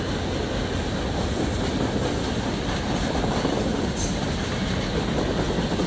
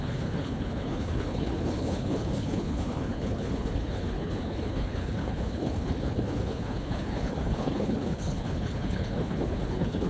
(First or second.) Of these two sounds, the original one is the first